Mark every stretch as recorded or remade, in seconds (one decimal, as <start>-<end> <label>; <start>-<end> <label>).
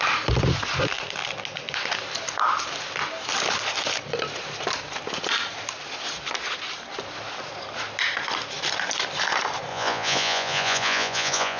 0.0-9.7 recorded; 9.7-11.6 remade